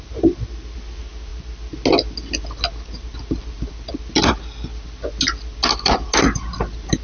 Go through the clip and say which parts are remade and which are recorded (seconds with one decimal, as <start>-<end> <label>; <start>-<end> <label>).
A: 0.0-7.0 recorded